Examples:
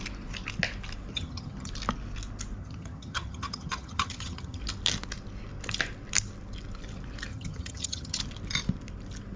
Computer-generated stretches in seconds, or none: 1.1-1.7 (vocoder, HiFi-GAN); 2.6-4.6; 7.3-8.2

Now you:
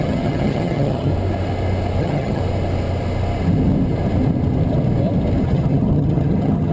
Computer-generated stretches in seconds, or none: 0.0-1.1 (vocoder, HiFi-GAN); 2.0-2.4; 5.4-6.7

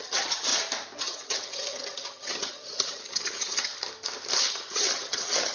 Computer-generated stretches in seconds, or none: 0.0-0.5 (vocoder, HiFi-GAN); 1.0-3.7; 4.5-5.5

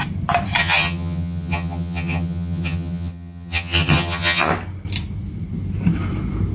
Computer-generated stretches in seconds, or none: 0.6-4.5 (vocoder, HiFi-GAN)

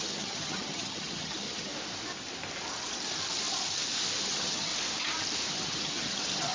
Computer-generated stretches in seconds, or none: 0.0-1.7 (vocoder, HiFi-GAN); 4.2-4.7; 5.5-6.5

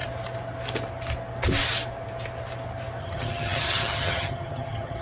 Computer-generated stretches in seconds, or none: 3.0-5.0 (vocoder, HiFi-GAN)

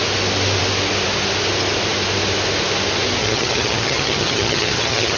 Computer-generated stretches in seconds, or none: 3.2-5.2 (vocoder, HiFi-GAN)

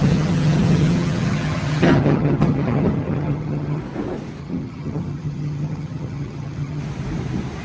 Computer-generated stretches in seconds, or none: 0.0-3.8 (vocoder, HiFi-GAN); 4.4-6.8